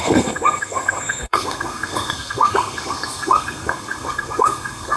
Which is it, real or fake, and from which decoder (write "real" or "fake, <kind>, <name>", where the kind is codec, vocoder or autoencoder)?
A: fake, codec, SNAC